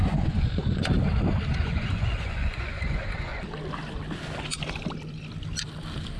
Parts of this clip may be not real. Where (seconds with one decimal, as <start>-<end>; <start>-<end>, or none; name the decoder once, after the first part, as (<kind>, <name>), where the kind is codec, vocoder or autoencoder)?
0.0-0.8 (vocoder, Vocos); 1.6-3.3